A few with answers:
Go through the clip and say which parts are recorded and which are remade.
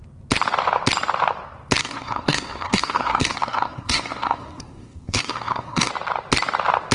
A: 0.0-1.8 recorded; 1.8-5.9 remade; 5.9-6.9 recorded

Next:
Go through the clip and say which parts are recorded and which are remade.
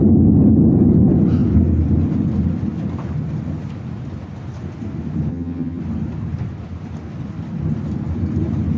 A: 0.0-5.3 recorded; 5.3-5.8 remade; 5.8-8.8 recorded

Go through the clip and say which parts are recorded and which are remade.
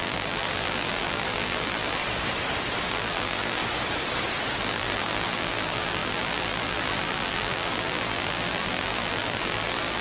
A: 0.0-2.0 remade; 2.0-2.9 recorded; 2.9-3.6 remade; 3.6-4.6 recorded; 4.6-10.0 remade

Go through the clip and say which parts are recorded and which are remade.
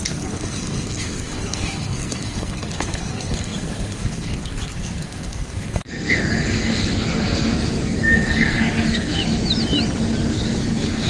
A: 0.0-9.2 remade; 9.2-10.2 recorded; 10.2-11.1 remade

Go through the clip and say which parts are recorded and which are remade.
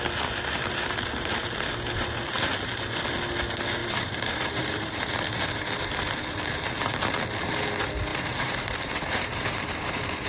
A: 0.0-3.8 recorded; 3.8-5.1 remade; 5.1-8.1 recorded; 8.1-10.3 remade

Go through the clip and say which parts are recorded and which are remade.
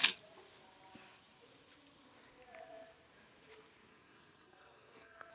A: 0.0-3.9 recorded; 3.9-5.3 remade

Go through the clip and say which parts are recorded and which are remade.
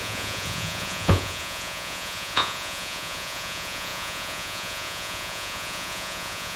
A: 0.0-6.6 remade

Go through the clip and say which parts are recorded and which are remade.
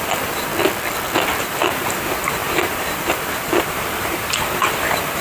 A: 0.0-0.5 remade; 0.5-1.4 recorded; 1.4-5.2 remade